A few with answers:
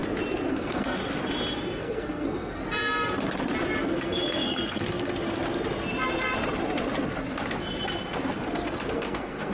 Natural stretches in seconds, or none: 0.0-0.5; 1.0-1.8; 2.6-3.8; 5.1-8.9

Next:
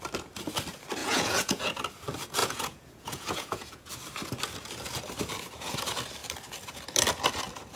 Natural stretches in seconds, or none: 0.0-1.0; 1.8-2.4; 3.9-7.8